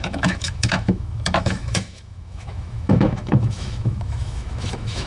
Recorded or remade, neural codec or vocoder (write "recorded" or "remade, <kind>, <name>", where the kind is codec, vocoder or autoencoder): remade, autoencoder, DAC-VAE